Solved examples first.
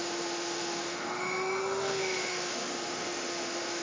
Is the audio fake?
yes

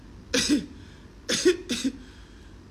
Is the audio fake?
no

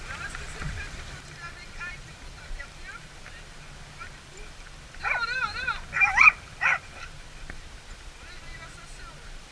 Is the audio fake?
yes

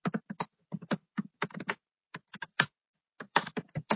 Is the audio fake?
yes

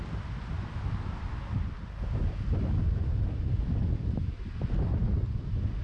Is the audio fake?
no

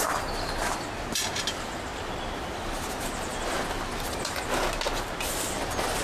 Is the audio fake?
no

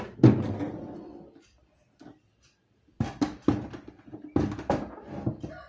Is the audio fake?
no